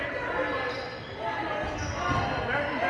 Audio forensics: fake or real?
real